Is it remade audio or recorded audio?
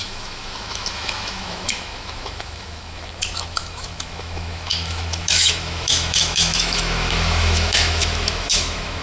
remade